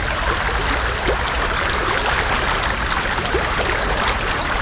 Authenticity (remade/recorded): recorded